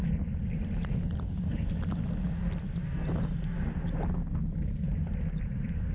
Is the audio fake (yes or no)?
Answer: no